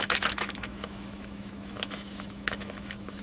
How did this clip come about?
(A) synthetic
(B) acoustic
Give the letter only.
A